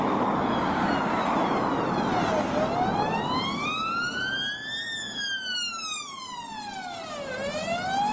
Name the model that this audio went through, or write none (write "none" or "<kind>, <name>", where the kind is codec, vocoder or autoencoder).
none